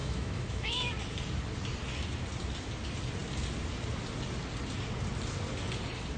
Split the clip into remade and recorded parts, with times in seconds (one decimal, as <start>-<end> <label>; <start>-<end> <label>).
0.0-0.9 remade; 0.9-6.2 recorded

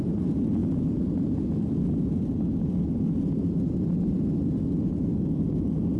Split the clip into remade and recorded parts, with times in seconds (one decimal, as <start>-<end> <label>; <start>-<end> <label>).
0.0-6.0 recorded

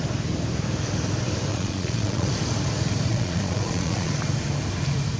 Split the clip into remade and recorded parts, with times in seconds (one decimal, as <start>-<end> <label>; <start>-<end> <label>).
0.0-1.5 recorded; 1.5-2.3 remade; 2.3-3.1 recorded; 3.1-4.1 remade; 4.1-5.2 recorded

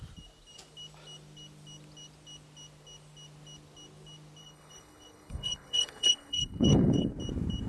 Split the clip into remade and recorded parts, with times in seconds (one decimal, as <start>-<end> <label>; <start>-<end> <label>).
0.0-4.4 recorded; 4.4-7.1 remade; 7.1-7.7 recorded

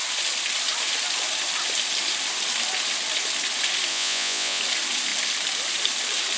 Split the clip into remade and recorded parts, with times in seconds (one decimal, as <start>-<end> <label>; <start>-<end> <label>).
0.0-3.9 recorded; 3.9-4.6 remade; 4.6-6.4 recorded

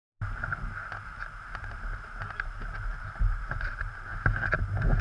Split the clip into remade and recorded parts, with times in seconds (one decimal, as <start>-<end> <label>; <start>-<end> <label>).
0.0-3.0 recorded; 3.0-4.1 remade; 4.1-5.0 recorded